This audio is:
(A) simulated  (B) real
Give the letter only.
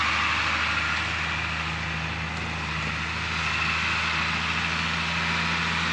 B